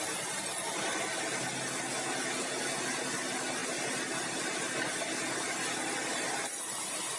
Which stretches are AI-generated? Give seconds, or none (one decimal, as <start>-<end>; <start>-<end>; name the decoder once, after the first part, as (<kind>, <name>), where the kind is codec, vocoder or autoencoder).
none